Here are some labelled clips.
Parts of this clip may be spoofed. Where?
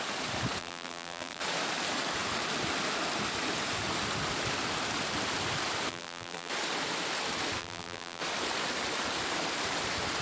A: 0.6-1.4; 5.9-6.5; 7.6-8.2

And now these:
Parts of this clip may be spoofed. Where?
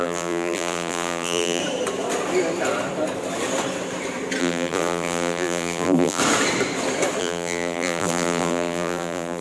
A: 0.0-1.6; 4.4-6.2; 7.2-9.4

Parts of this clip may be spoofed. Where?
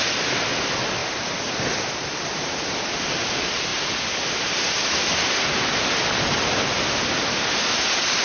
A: 3.7-6.3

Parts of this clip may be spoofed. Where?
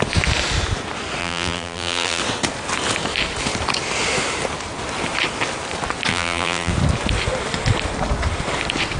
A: 1.2-2.2; 6.1-6.7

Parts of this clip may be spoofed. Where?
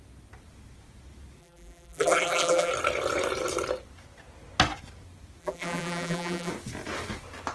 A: 1.4-2.7; 5.4-6.5